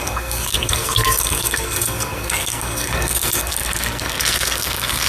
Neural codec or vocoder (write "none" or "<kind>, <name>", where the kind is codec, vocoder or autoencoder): codec, SNAC